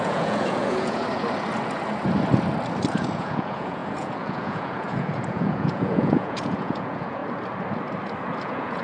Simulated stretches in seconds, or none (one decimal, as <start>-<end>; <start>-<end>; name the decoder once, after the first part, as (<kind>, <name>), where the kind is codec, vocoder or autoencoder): 0.0-1.0 (vocoder, Vocos); 2.9-7.2; 8.4-8.8